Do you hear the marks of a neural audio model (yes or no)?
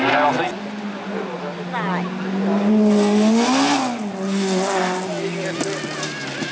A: no